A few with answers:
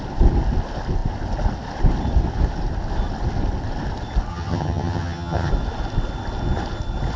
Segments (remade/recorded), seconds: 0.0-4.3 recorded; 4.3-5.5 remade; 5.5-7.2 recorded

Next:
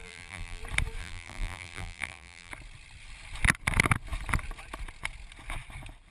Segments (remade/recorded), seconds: 0.0-0.6 remade; 0.6-1.0 recorded; 1.0-2.5 remade; 2.5-6.1 recorded

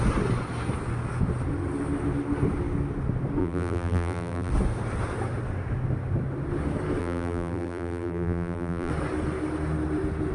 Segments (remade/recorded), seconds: 0.0-3.4 recorded; 3.4-4.5 remade; 4.5-7.0 recorded; 7.0-8.9 remade; 8.9-10.3 recorded

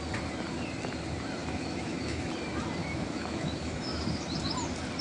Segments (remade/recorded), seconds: 0.0-1.4 recorded; 1.4-2.3 remade; 2.3-2.8 recorded; 2.8-4.0 remade; 4.0-5.0 recorded

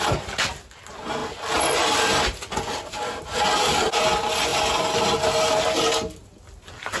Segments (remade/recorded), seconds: 0.0-7.0 recorded

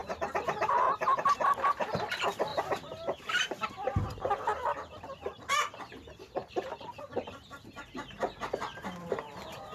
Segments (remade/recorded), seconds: 0.0-0.8 remade; 0.8-2.5 recorded; 2.5-3.7 remade; 3.7-6.4 recorded; 6.4-8.8 remade; 8.8-9.7 recorded

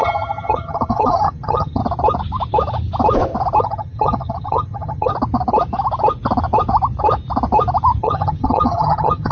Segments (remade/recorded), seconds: 0.0-1.8 remade; 1.8-3.6 recorded; 3.6-5.1 remade; 5.1-8.0 recorded; 8.0-9.3 remade

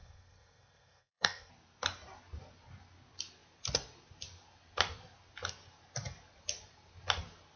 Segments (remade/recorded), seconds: 0.0-1.5 remade; 1.5-7.6 recorded